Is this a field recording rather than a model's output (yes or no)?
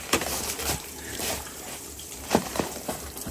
no